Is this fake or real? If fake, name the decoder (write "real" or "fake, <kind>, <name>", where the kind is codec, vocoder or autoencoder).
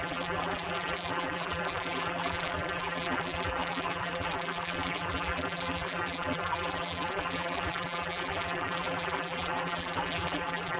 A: fake, vocoder, BigVGAN v2